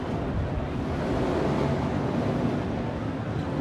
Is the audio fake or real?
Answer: real